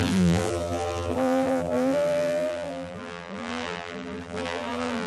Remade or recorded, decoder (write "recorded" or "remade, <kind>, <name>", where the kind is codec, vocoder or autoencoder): remade, vocoder, BigVGAN v2